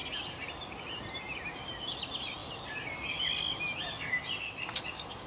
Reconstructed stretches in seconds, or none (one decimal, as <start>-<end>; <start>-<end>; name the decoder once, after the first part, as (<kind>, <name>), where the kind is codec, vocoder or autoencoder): none